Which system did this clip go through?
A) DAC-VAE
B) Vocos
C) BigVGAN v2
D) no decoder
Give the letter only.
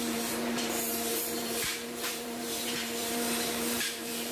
C